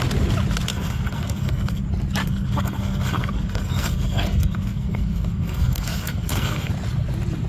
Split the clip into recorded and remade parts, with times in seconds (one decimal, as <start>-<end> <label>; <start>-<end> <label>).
0.0-0.7 recorded; 0.7-1.8 remade; 1.8-2.2 recorded; 2.2-6.7 remade; 6.7-7.5 recorded